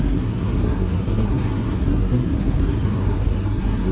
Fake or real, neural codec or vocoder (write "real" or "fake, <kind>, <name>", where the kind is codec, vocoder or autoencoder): fake, codec, SNAC